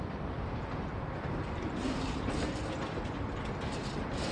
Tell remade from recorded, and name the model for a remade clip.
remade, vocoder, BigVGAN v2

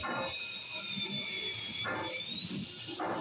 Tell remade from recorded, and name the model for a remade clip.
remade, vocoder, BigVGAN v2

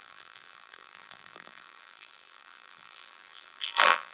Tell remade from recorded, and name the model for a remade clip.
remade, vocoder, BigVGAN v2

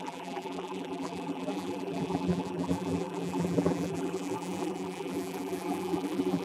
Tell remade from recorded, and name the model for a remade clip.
remade, vocoder, BigVGAN v2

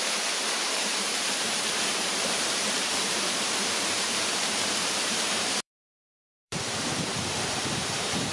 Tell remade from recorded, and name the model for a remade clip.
remade, vocoder, BigVGAN v2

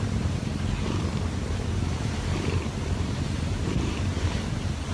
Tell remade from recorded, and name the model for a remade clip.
remade, vocoder, BigVGAN v2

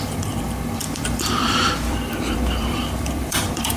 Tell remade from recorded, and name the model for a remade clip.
remade, vocoder, BigVGAN v2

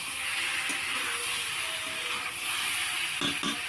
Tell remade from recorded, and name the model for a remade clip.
recorded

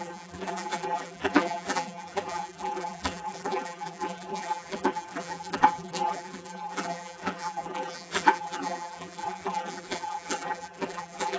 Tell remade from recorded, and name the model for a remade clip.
remade, vocoder, BigVGAN v2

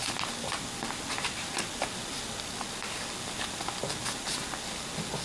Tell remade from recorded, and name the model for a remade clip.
recorded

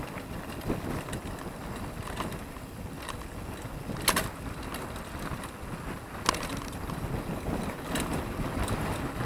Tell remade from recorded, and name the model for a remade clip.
recorded